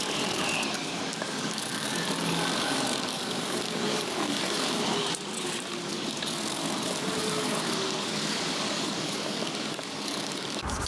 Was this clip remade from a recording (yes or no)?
yes